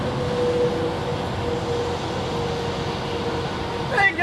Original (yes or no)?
yes